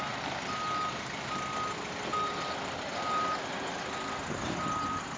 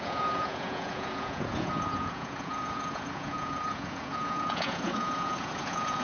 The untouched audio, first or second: first